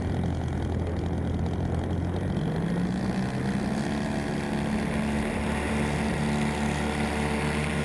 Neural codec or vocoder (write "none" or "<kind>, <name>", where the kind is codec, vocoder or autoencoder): none